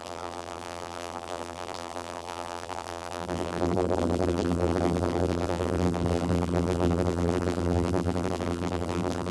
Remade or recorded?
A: remade